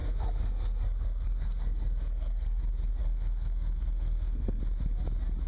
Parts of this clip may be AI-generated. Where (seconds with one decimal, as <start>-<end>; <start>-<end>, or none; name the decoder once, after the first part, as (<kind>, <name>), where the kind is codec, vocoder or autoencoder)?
0.0-2.6 (codec, SNAC); 3.0-4.6